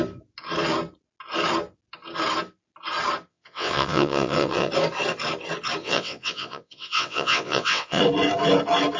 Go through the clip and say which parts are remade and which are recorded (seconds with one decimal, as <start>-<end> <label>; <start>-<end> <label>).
0.0-3.3 recorded; 3.3-4.7 remade; 4.7-5.8 recorded; 5.8-8.0 remade; 8.0-9.0 recorded